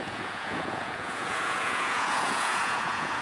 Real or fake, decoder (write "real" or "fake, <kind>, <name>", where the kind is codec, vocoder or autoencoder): fake, vocoder, Vocos